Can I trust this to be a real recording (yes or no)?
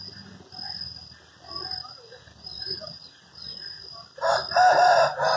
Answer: yes